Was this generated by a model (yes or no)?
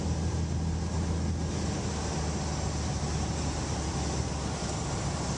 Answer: no